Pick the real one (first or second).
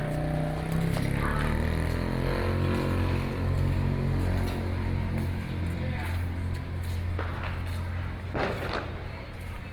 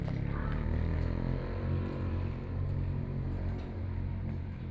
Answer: first